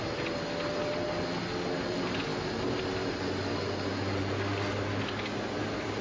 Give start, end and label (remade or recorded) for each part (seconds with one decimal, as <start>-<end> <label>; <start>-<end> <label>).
0.0-6.0 recorded